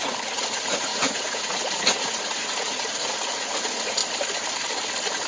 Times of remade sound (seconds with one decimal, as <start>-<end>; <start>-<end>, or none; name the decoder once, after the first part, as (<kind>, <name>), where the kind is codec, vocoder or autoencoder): 0.0-4.0 (vocoder, Vocos)